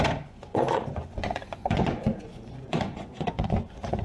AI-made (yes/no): yes